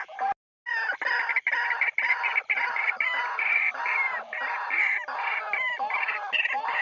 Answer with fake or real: real